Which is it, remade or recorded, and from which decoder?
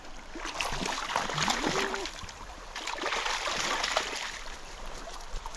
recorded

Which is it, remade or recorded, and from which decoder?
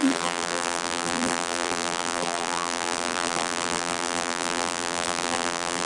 remade, vocoder, BigVGAN v2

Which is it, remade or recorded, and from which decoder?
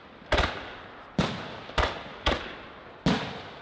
recorded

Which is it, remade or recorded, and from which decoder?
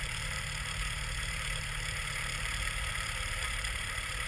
remade, vocoder, BigVGAN v2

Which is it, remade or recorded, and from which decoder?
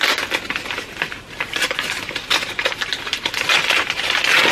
recorded